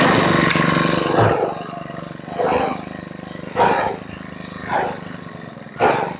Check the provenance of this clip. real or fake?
real